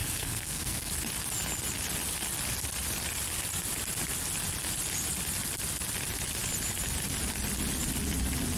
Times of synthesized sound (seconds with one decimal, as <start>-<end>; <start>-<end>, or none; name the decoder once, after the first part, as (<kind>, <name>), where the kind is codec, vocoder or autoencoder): 0.0-0.9 (codec, SNAC)